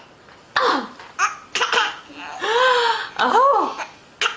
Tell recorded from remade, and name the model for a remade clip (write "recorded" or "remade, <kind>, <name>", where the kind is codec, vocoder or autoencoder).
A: recorded